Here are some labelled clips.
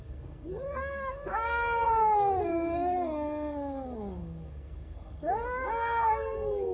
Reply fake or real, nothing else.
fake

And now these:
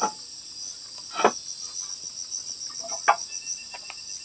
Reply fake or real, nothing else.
real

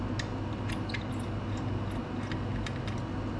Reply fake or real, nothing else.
real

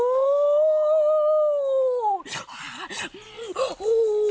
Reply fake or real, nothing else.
real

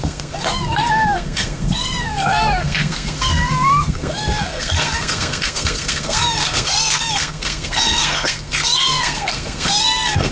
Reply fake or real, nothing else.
fake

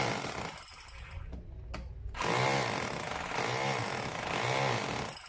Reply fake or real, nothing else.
real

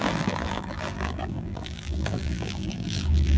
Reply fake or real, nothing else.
fake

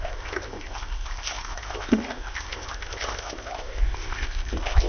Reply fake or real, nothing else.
fake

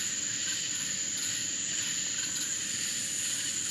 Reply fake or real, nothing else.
real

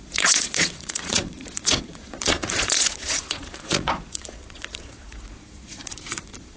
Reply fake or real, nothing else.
fake